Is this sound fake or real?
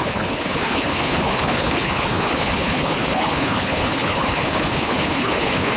fake